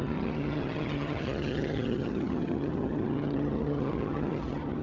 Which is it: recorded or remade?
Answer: remade